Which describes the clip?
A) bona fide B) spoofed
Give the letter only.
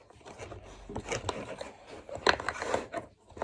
A